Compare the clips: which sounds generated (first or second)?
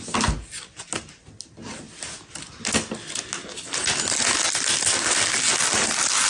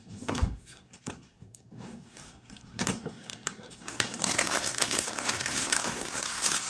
second